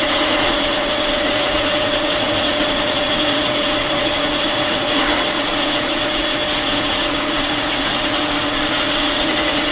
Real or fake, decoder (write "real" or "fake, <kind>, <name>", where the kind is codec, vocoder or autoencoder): fake, vocoder, Vocos